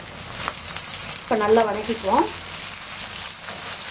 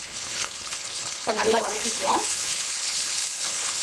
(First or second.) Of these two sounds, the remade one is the second